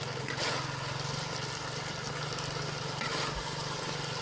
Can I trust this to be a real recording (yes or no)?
yes